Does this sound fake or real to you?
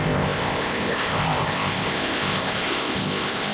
fake